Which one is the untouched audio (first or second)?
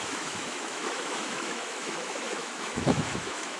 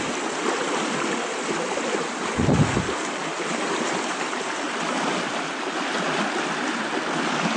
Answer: second